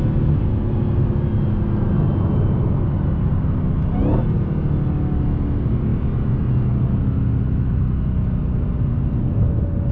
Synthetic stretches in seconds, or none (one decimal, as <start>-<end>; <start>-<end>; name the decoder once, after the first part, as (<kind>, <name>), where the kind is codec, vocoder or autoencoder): none